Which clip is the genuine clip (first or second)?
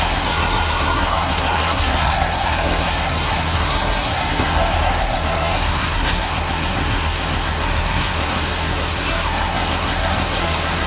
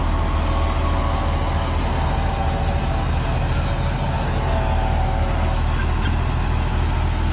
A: second